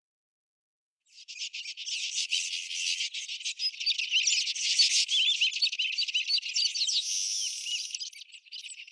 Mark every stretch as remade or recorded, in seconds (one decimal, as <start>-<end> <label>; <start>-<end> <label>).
0.0-2.2 recorded; 2.2-3.0 remade; 3.0-8.9 recorded